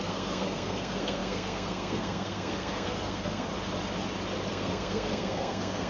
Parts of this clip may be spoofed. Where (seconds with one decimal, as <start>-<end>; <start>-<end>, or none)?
0.0-3.5; 4.5-5.9